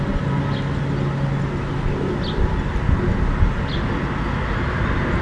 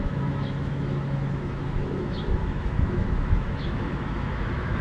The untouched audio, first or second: first